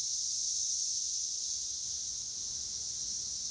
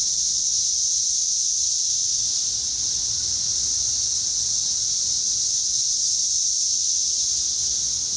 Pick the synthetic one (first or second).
first